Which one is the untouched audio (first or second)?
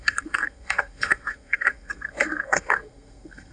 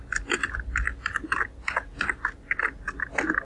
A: second